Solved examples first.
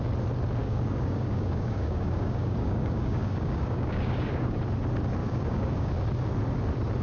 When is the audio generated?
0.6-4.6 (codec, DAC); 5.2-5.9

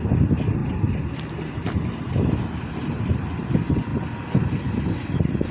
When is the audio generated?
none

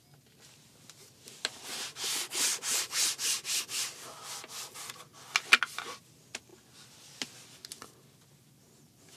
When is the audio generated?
2.5-3.6 (vocoder, BigVGAN v2)